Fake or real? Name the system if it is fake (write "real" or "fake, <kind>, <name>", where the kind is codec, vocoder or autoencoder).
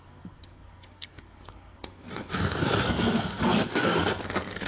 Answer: fake, codec, SNAC